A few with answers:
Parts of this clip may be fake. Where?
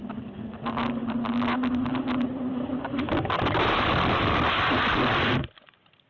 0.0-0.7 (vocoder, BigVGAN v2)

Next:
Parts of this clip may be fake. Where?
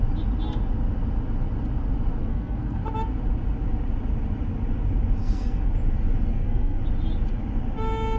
2.2-2.8 (codec, SNAC); 5.2-5.7; 6.3-6.8